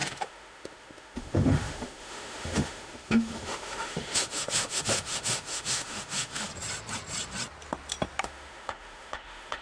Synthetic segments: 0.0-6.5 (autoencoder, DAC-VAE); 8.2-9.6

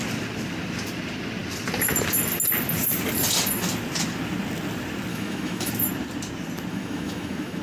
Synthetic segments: 5.1-5.7 (autoencoder, DAC-VAE); 6.7-7.6